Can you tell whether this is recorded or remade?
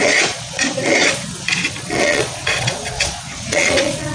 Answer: remade